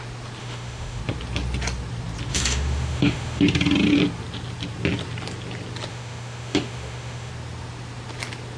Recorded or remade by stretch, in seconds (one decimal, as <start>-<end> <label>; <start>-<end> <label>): 0.0-0.4 recorded; 0.4-1.0 remade; 1.0-2.3 recorded; 2.3-3.4 remade; 3.4-5.9 recorded; 5.9-7.3 remade; 7.3-8.6 recorded